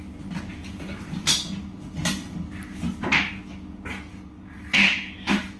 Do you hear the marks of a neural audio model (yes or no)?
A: no